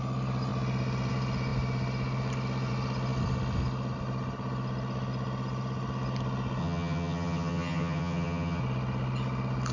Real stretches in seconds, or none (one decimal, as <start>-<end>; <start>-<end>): 0.0-6.6; 8.6-9.7